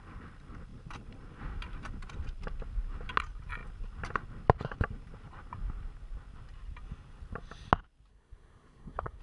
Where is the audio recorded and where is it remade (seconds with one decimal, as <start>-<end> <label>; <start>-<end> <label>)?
0.0-8.1 recorded; 8.1-9.2 remade